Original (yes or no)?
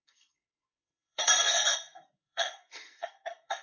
no